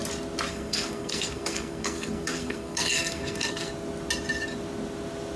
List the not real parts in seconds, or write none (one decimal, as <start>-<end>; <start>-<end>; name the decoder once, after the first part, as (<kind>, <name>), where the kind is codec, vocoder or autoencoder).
0.5-3.7 (codec, SNAC)